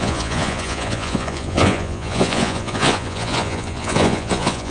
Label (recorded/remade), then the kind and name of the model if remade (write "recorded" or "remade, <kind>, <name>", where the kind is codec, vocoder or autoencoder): remade, vocoder, Vocos